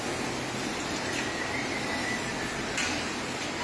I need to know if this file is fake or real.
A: real